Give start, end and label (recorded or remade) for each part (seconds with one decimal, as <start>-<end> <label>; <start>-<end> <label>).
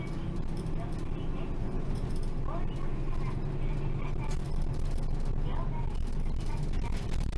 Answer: 0.0-1.6 recorded; 1.6-2.1 remade; 2.1-7.4 recorded